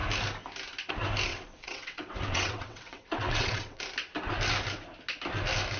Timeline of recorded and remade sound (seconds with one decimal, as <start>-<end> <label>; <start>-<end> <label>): 0.0-1.3 recorded; 1.3-3.8 remade; 3.8-5.8 recorded